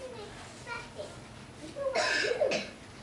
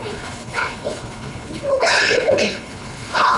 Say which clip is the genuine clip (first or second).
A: first